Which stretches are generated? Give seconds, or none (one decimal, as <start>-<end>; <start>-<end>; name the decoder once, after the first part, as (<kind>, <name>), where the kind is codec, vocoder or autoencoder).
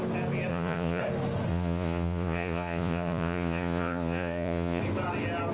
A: 0.5-1.0 (vocoder, Vocos); 1.5-4.8